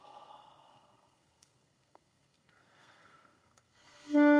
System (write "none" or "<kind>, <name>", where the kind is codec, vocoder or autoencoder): codec, SNAC